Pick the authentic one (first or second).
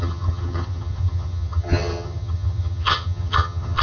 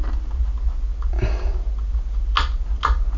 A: second